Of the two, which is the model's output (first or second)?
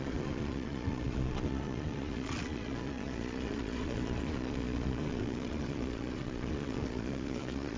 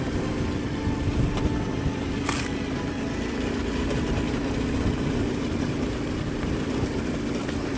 first